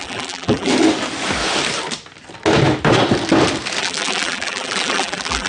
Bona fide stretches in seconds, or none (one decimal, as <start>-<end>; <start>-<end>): 0.7-3.8